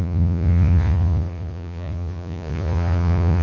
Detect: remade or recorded remade